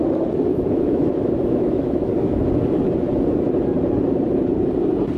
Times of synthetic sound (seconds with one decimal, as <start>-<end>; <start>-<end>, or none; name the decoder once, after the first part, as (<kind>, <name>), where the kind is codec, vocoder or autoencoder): 0.5-2.4 (autoencoder, DAC-VAE)